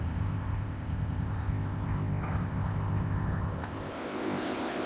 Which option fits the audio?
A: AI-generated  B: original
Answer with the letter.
A